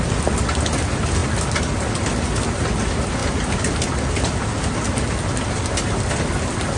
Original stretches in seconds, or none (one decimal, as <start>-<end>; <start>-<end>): 0.0-6.8